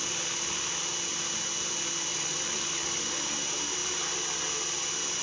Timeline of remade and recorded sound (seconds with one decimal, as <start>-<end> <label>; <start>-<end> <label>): 0.0-2.1 recorded; 2.1-3.0 remade; 3.0-5.2 recorded